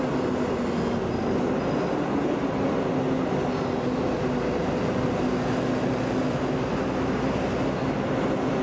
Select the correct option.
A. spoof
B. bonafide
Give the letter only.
B